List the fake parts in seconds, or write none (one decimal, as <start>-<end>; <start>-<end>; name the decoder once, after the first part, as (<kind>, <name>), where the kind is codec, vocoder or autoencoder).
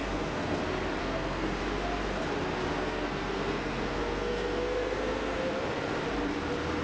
0.0-0.6 (codec, SNAC); 1.0-1.6; 2.7-5.6